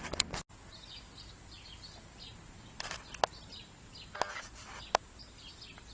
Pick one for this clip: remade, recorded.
recorded